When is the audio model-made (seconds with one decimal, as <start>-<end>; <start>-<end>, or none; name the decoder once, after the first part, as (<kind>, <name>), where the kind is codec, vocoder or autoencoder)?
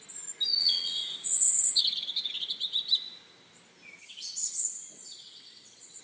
0.6-1.8 (vocoder, WaveNeXt); 4.0-6.0